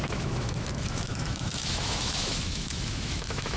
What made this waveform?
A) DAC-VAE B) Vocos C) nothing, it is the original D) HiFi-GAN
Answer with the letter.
A